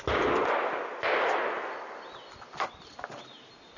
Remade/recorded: recorded